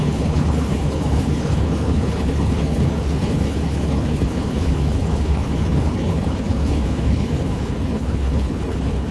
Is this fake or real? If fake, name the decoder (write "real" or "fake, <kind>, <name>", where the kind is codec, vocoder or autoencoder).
fake, codec, HILCodec